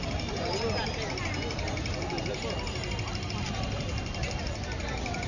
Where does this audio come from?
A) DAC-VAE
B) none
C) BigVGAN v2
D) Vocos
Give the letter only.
B